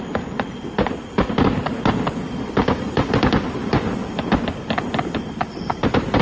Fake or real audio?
real